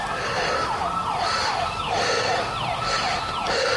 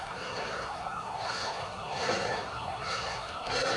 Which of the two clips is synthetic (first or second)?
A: second